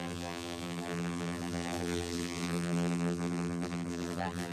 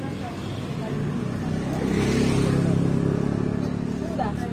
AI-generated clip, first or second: first